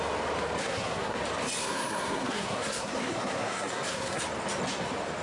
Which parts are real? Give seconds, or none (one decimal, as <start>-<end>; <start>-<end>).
0.0-0.6; 1.2-1.6; 4.2-5.2